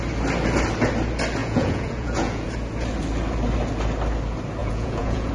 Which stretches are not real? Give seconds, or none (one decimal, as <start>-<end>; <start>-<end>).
1.4-2.5; 4.6-5.3